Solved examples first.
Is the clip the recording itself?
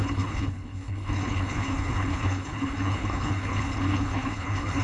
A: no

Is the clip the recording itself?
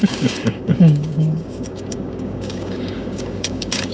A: no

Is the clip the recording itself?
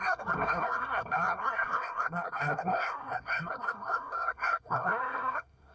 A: no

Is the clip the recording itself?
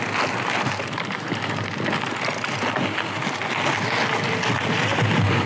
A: yes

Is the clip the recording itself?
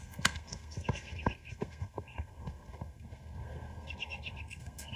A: no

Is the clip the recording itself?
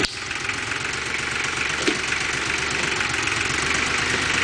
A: no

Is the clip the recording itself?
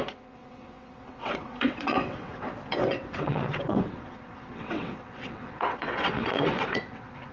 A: no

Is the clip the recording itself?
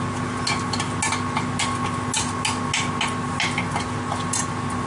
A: yes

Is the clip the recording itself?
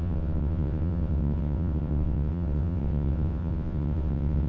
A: no